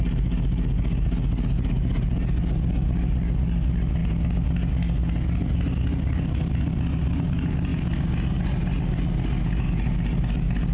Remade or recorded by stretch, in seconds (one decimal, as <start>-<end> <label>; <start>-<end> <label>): 0.0-10.7 recorded